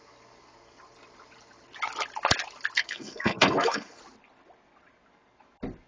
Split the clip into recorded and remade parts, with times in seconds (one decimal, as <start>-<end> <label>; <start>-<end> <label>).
0.0-2.8 recorded; 2.8-4.0 remade; 4.0-5.9 recorded